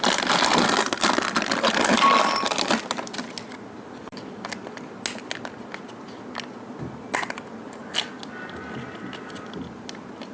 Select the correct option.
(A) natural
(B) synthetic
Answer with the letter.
A